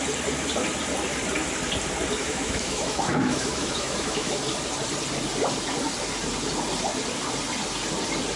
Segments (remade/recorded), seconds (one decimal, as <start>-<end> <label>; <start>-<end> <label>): 0.0-2.2 recorded; 2.2-4.4 remade; 4.4-8.4 recorded